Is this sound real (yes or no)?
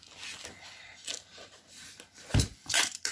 yes